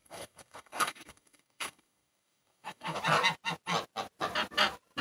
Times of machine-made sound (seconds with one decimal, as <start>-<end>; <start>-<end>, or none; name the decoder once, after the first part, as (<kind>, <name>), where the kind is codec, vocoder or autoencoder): 0.0-3.0 (codec, DAC)